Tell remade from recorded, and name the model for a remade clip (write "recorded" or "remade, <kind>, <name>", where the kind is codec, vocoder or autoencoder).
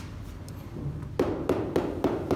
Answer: recorded